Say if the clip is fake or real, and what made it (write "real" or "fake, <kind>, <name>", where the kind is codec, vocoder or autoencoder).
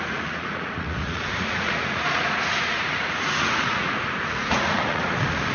fake, vocoder, Vocos